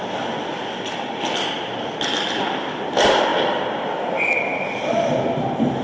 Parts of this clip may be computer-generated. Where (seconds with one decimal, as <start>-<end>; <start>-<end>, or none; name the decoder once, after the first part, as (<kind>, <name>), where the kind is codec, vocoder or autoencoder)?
none